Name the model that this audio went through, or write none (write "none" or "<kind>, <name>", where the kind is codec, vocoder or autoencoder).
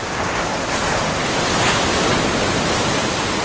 none